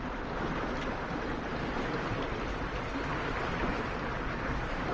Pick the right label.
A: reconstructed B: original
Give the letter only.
B